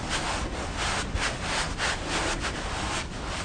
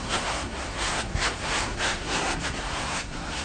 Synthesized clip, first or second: second